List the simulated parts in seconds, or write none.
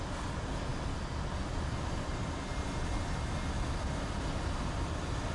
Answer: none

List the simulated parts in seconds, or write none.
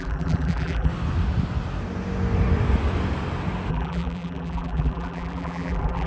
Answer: 0.0-0.9; 3.7-6.1